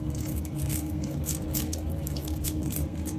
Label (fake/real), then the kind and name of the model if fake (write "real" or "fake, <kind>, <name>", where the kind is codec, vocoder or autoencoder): fake, codec, SNAC